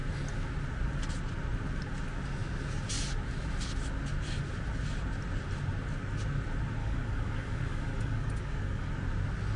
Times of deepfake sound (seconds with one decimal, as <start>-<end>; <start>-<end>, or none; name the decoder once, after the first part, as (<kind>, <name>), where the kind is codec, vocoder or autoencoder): 6.8-8.9 (codec, DAC)